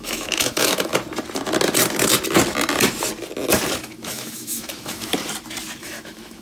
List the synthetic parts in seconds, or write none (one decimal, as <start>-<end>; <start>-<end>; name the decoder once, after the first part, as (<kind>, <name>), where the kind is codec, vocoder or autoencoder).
0.0-0.9 (autoencoder, DAC-VAE); 3.8-5.1; 5.8-6.4